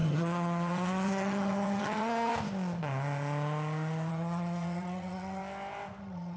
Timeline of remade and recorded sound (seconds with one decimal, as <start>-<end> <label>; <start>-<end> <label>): 0.0-2.3 remade; 2.3-4.1 recorded; 4.1-5.4 remade; 5.4-6.0 recorded; 6.0-6.4 remade